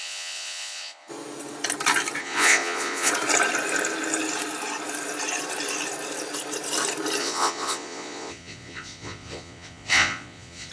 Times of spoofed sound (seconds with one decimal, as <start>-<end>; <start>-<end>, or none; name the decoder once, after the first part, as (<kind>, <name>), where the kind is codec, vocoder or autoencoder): 0.0-1.1 (vocoder, Vocos); 2.2-3.1; 7.2-10.7